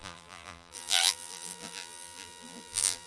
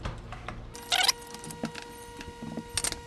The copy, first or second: first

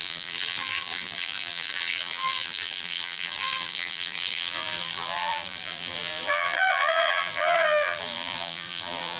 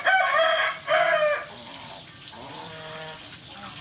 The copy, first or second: first